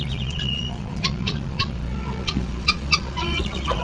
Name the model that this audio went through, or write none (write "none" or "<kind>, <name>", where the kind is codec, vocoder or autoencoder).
vocoder, Vocos